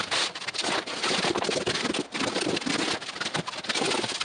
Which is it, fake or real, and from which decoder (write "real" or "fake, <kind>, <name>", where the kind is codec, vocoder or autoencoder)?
real